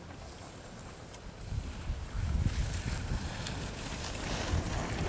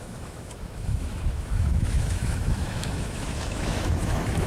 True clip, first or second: first